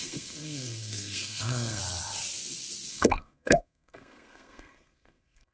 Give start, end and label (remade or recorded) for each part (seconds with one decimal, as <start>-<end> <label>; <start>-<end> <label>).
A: 0.0-1.8 remade; 1.8-2.9 recorded; 2.9-5.5 remade